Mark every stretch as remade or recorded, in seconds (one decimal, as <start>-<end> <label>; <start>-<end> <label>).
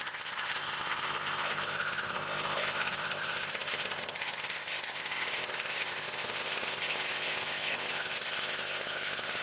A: 0.0-9.4 remade